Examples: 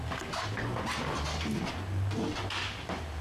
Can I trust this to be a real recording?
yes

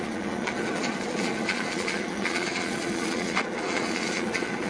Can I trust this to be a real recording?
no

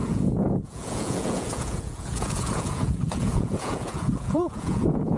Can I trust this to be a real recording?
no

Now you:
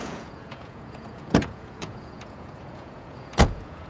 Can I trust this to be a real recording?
no